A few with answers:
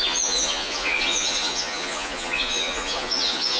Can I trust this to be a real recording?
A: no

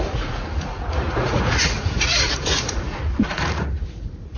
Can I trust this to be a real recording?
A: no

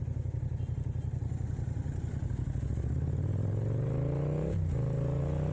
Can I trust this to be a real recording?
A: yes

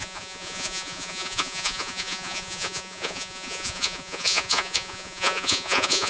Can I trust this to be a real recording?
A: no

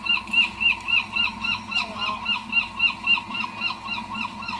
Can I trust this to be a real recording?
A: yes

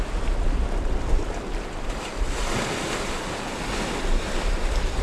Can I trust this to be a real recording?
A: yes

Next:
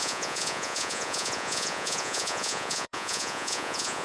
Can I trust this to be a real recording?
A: no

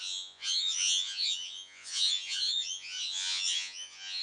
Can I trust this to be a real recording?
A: no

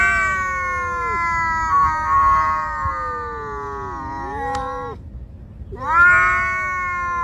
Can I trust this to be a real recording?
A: yes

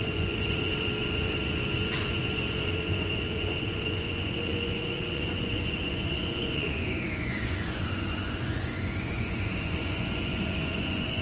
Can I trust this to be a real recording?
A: no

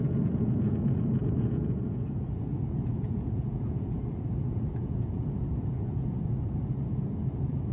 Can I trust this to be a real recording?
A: no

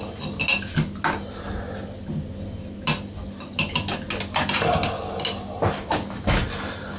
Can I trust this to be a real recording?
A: yes